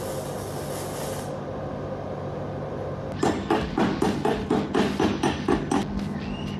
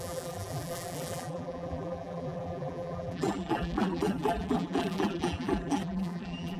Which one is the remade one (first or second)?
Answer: second